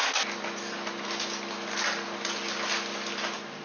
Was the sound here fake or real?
real